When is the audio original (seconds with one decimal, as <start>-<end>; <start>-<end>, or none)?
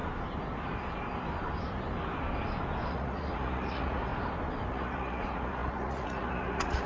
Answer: 0.0-2.9; 4.1-4.7